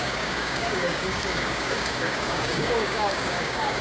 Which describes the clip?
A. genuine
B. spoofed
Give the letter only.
B